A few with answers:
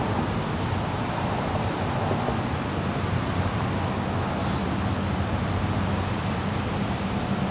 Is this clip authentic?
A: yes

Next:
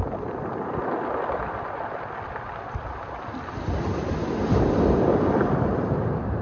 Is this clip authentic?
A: yes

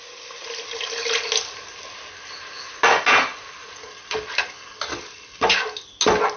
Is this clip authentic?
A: yes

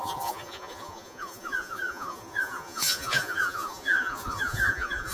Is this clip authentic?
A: no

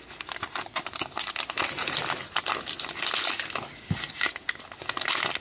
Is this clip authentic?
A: yes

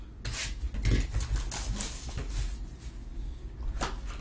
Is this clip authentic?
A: yes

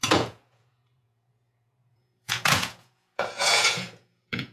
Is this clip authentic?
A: no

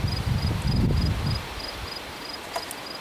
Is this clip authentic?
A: yes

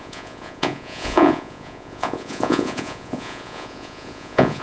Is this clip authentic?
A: no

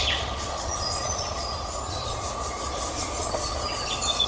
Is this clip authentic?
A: no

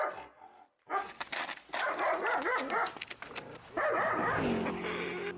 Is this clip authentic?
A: yes